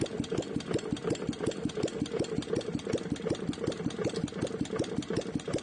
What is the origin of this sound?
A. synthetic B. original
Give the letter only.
B